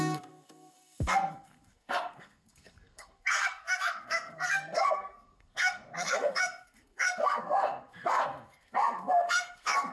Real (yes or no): no